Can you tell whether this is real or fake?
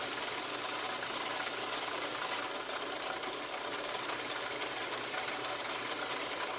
real